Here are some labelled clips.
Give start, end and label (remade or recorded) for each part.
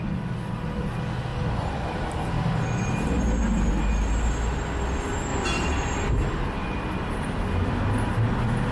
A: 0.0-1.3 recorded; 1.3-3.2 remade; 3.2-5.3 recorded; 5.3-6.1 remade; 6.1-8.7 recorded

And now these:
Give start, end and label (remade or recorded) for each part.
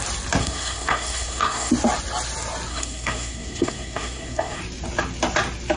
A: 0.0-0.4 recorded; 0.4-1.7 remade; 1.7-2.7 recorded; 2.7-4.6 remade; 4.6-5.8 recorded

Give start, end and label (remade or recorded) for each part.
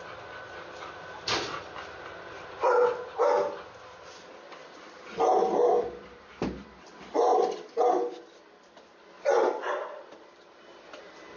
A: 0.0-11.4 recorded